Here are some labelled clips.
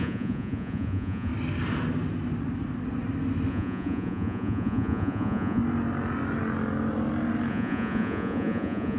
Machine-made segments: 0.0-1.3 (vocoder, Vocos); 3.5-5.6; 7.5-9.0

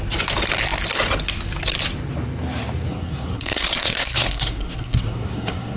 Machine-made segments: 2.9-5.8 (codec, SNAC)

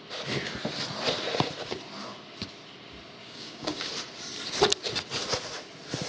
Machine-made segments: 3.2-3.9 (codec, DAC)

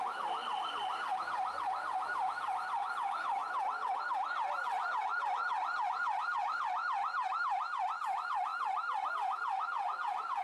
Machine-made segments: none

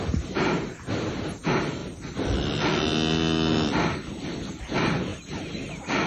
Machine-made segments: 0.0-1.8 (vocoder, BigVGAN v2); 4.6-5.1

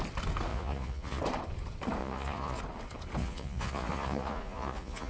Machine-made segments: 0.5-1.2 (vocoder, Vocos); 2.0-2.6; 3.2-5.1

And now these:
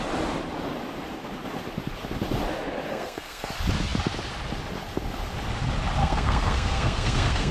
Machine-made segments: 2.9-3.5 (codec, SNAC); 6.0-7.5

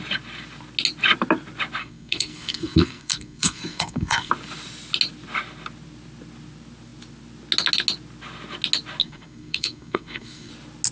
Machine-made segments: 1.8-4.3 (codec, SNAC); 9.0-10.5